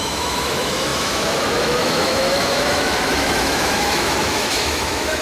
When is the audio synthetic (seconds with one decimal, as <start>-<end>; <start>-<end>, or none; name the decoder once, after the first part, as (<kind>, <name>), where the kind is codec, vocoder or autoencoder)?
0.0-5.2 (autoencoder, DAC-VAE)